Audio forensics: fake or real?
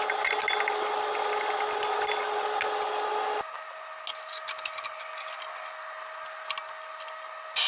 real